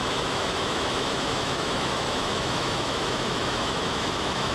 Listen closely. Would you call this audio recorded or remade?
remade